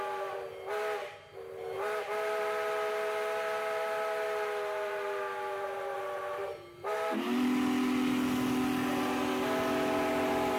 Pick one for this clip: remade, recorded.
recorded